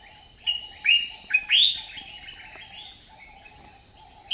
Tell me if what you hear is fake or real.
real